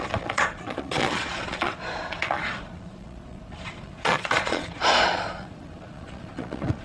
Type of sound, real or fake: fake